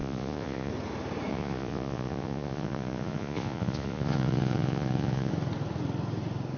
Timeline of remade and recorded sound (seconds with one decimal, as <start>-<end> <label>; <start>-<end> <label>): 0.0-0.7 remade; 0.7-1.3 recorded; 1.3-5.3 remade; 5.3-6.6 recorded